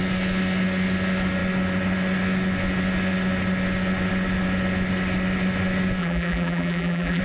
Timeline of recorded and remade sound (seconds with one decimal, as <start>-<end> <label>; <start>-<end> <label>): 0.0-6.0 recorded; 6.0-7.2 remade

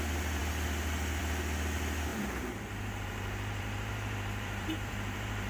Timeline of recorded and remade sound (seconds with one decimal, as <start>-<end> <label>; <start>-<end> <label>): 0.0-2.1 recorded; 2.1-5.5 remade

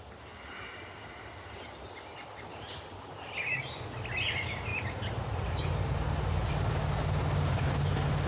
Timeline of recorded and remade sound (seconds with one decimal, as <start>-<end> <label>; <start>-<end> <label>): 0.0-2.5 recorded; 2.5-3.8 remade; 3.8-4.7 recorded; 4.7-6.5 remade; 6.5-8.3 recorded

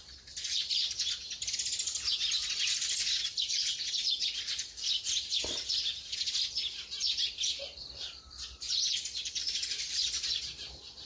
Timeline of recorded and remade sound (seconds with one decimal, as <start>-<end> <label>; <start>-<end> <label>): 0.0-9.4 recorded; 9.4-10.4 remade; 10.4-11.1 recorded